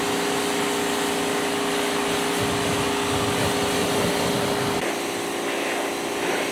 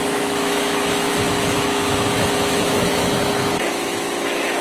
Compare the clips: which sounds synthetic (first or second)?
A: second